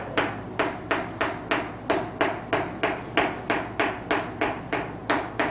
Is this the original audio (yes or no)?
yes